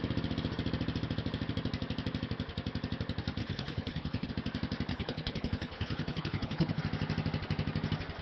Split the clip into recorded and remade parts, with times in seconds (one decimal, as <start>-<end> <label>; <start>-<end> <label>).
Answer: 0.0-3.4 recorded; 3.4-4.3 remade; 4.3-4.9 recorded; 4.9-6.8 remade; 6.8-8.2 recorded

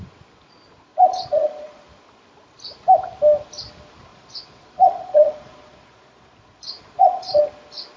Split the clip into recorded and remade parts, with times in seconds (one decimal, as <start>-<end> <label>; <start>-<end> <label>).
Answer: 0.0-0.9 recorded; 0.9-1.8 remade; 1.8-4.1 recorded; 4.1-7.4 remade; 7.4-8.0 recorded

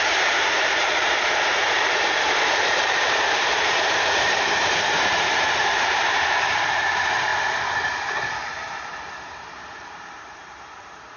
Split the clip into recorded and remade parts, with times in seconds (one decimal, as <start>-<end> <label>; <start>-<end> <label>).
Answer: 0.0-7.3 remade; 7.3-7.9 recorded; 7.9-11.2 remade